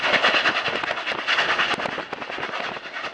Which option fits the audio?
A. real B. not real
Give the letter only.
A